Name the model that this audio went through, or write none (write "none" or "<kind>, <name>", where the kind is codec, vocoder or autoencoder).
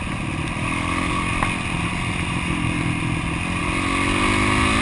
none